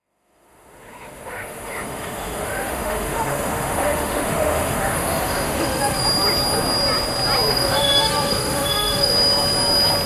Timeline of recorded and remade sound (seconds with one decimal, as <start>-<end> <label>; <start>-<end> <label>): 0.0-6.0 remade; 6.0-7.5 recorded; 7.5-9.1 remade; 9.1-10.1 recorded